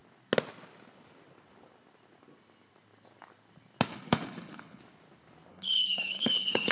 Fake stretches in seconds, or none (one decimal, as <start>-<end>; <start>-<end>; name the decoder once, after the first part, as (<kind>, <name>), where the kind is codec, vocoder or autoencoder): 3.9-4.8 (codec, HILCodec); 5.5-6.7